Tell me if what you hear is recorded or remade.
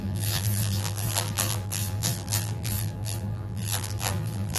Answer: remade